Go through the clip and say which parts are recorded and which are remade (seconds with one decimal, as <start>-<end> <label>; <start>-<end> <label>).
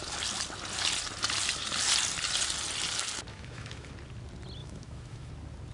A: 0.0-3.3 recorded; 3.3-3.9 remade; 3.9-4.6 recorded; 4.6-5.3 remade; 5.3-5.7 recorded